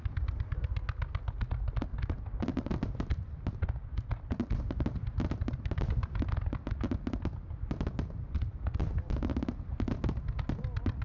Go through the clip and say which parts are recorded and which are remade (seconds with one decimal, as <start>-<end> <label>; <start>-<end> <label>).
0.0-11.0 recorded